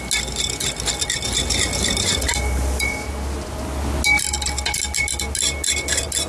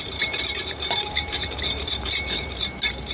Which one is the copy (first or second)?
second